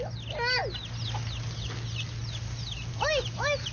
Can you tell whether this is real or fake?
real